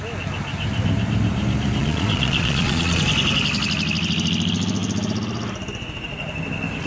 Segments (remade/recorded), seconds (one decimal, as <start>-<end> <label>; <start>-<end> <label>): 0.0-1.8 recorded; 1.8-3.0 remade; 3.0-6.9 recorded